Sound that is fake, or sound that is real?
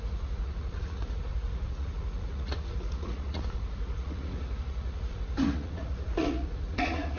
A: fake